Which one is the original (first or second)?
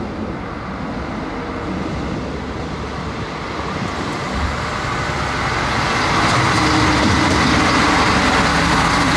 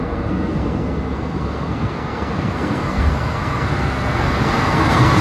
first